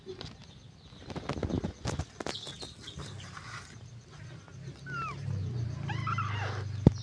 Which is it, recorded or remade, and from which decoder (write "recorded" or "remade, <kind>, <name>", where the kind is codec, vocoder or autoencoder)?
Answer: recorded